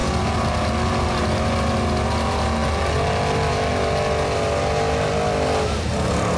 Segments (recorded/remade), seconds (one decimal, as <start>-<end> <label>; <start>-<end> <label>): 0.0-6.4 recorded